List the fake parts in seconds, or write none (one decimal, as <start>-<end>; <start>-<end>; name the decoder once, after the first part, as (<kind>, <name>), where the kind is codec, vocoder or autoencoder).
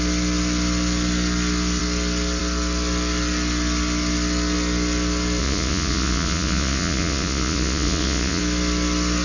5.4-8.4 (vocoder, Vocos)